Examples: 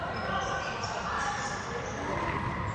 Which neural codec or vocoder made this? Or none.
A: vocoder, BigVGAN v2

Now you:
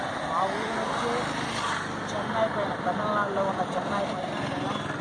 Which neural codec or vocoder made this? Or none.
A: none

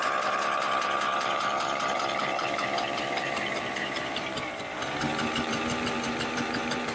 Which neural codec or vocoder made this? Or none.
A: vocoder, BigVGAN v2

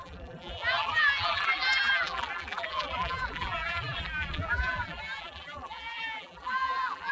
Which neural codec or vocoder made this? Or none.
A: vocoder, BigVGAN v2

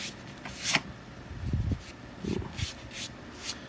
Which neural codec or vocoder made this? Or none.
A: none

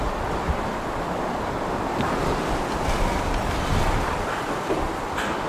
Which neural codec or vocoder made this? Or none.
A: none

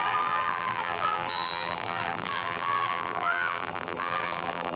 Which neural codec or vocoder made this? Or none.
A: vocoder, BigVGAN v2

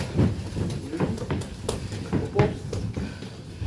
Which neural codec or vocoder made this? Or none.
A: none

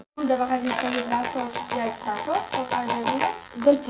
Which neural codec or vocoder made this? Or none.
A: vocoder, BigVGAN v2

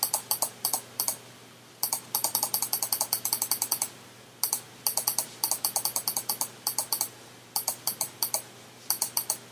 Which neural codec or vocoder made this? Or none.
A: none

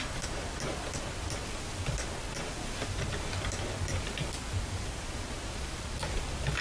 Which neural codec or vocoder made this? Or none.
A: vocoder, BigVGAN v2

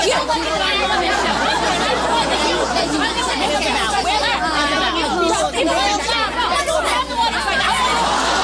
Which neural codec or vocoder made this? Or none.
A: none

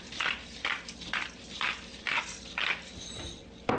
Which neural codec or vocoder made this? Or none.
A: vocoder, BigVGAN v2